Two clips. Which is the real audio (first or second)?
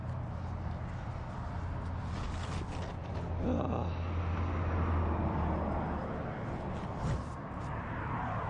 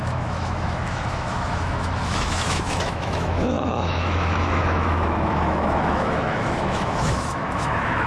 first